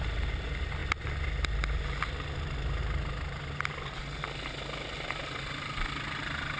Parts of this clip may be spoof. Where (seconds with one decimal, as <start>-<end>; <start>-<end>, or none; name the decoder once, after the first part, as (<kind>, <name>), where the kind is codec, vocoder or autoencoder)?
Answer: none